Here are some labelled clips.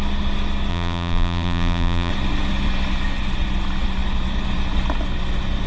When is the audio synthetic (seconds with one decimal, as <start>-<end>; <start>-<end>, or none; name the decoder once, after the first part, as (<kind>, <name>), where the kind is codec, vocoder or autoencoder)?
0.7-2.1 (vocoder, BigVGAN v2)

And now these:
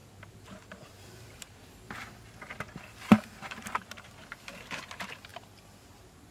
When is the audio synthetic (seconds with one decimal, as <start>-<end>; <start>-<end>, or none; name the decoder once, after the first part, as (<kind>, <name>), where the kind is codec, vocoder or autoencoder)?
0.0-1.7 (vocoder, BigVGAN v2); 3.1-4.1

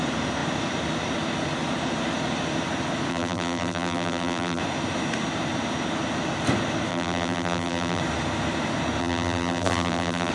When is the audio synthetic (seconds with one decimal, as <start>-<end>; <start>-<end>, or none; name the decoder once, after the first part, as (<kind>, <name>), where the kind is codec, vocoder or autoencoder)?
3.1-4.6 (vocoder, BigVGAN v2); 6.9-8.0; 9.0-10.3

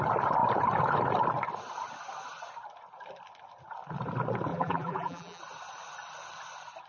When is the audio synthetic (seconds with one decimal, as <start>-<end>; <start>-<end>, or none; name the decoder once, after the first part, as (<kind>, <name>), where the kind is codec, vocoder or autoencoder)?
4.5-5.4 (vocoder, BigVGAN v2)

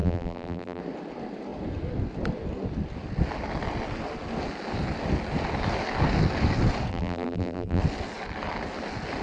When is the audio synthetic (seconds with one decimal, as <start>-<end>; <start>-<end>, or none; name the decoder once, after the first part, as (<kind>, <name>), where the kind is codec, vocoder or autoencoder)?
0.0-0.8 (vocoder, BigVGAN v2); 6.9-7.8